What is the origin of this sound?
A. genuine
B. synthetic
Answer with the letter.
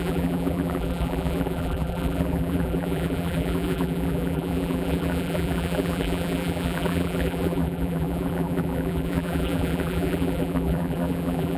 B